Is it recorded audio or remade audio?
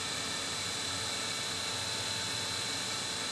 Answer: recorded